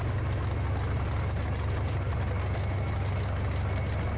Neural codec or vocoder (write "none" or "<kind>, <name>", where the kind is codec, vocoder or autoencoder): none